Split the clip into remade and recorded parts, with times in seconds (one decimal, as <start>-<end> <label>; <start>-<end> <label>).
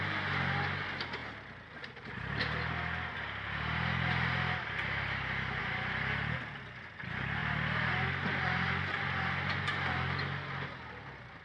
0.0-7.4 recorded; 7.4-8.8 remade; 8.8-11.4 recorded